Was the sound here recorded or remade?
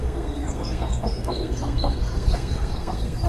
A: remade